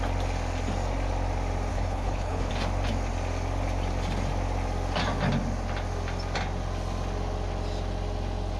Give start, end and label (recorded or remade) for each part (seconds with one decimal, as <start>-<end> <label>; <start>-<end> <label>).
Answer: 0.0-1.7 recorded; 1.7-2.5 remade; 2.5-8.6 recorded